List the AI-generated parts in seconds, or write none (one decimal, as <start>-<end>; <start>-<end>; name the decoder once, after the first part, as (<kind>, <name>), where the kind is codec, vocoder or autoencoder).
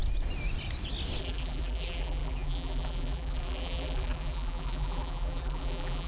1.2-6.1 (vocoder, BigVGAN v2)